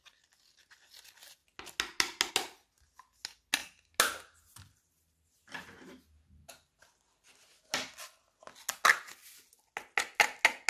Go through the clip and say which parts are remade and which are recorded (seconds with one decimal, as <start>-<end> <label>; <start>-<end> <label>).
0.0-10.7 recorded

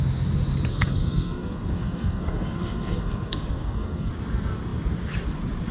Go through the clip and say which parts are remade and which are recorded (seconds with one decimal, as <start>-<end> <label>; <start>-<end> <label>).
0.0-0.7 recorded; 0.7-4.1 remade; 4.1-5.7 recorded

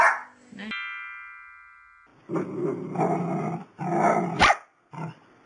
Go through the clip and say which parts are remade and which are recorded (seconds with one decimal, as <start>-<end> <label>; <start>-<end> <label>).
0.0-5.5 recorded

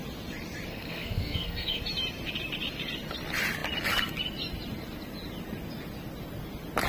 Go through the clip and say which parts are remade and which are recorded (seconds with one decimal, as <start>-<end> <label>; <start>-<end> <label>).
0.0-0.7 recorded; 0.7-1.8 remade; 1.8-6.9 recorded

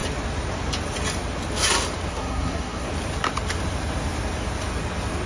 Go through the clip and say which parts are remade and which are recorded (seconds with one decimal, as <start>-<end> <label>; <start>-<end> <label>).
0.0-2.1 recorded; 2.1-2.9 remade; 2.9-5.3 recorded